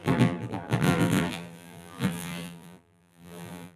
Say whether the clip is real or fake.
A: fake